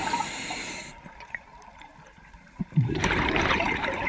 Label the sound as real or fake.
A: fake